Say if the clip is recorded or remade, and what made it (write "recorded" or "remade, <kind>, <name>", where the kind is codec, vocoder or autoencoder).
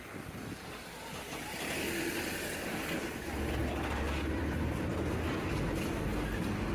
recorded